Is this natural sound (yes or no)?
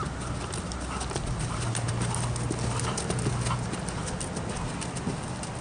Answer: yes